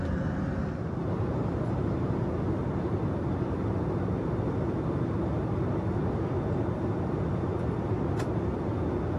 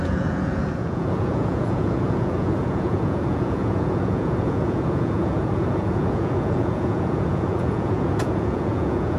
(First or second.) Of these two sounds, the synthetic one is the second